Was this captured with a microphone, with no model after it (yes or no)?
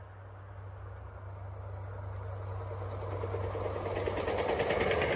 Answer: yes